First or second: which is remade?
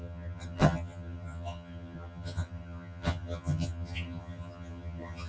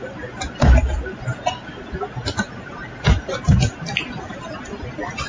first